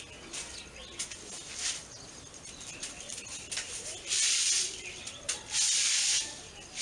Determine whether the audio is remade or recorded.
recorded